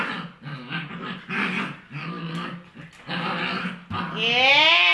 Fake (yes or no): no